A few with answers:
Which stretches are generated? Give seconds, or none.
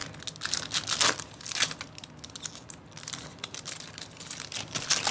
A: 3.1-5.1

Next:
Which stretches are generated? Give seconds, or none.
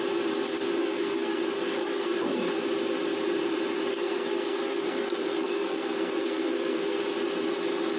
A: 0.8-1.4; 1.8-2.5; 3.9-7.0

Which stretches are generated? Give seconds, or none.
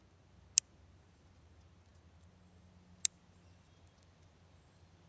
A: none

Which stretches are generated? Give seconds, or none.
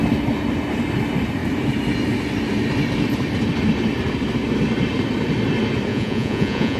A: 5.9-6.8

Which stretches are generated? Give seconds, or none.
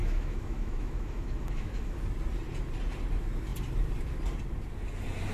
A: 0.0-2.0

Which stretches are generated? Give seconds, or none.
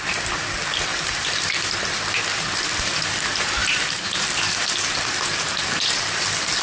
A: 0.9-3.0; 3.6-4.7